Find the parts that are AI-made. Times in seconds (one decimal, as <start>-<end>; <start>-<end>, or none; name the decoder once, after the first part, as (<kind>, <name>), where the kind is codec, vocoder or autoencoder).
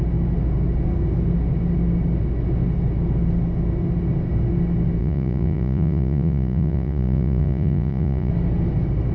5.0-8.3 (vocoder, Vocos)